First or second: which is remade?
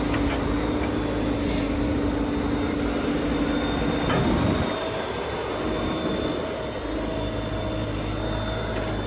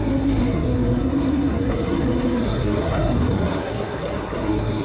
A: second